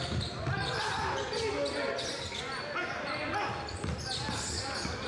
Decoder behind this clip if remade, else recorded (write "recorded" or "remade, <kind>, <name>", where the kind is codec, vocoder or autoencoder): recorded